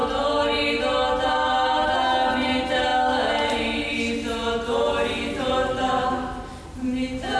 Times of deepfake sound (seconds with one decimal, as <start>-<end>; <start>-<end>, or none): none